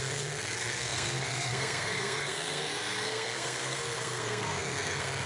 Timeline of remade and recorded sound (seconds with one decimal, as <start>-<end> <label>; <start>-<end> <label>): 0.0-5.3 remade